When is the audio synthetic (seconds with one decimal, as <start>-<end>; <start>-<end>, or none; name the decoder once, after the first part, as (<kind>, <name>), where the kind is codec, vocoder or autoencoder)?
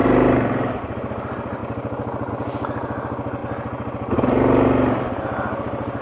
none